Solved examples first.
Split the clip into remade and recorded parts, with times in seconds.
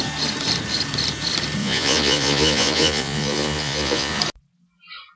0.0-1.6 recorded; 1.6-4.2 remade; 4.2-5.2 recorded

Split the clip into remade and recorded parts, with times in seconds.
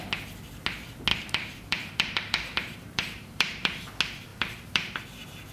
0.0-1.1 recorded; 1.1-3.8 remade; 3.8-4.3 recorded; 4.3-5.0 remade; 5.0-5.5 recorded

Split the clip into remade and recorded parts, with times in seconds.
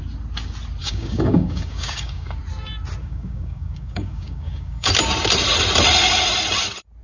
0.0-0.8 recorded; 0.8-2.4 remade; 2.4-3.0 recorded; 3.0-4.9 remade; 4.9-7.0 recorded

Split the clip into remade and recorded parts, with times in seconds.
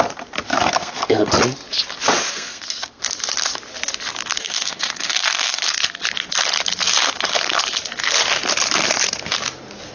0.0-0.5 recorded; 0.5-1.3 remade; 1.3-2.3 recorded; 2.3-3.0 remade; 3.0-4.4 recorded; 4.4-5.6 remade; 5.6-9.9 recorded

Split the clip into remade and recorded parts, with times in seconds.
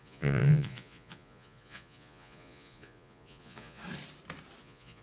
0.0-3.8 remade; 3.8-4.6 recorded; 4.6-5.0 remade